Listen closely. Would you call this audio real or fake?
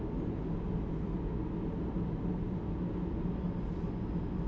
real